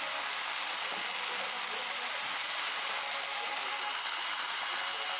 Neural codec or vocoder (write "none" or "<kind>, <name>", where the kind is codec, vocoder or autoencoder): none